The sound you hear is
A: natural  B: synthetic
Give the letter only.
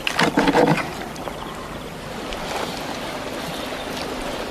A